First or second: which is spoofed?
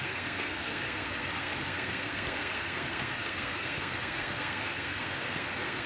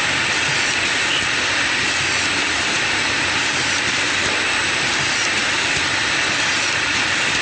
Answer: first